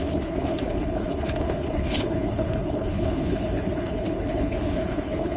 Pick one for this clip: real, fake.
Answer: fake